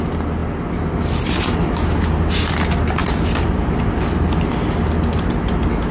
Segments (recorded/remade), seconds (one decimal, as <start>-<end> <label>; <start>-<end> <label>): 0.0-5.9 recorded